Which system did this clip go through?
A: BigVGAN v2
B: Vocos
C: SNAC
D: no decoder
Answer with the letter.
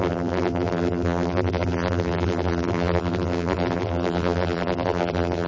A